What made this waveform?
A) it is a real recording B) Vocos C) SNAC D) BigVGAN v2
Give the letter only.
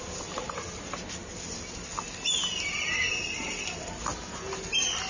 A